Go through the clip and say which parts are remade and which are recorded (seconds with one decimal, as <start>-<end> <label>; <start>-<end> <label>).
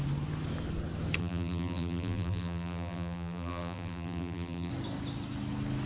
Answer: 0.0-1.2 recorded; 1.2-4.7 remade; 4.7-5.9 recorded